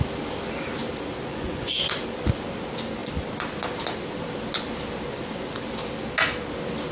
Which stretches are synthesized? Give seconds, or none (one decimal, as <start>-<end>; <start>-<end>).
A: 1.3-1.8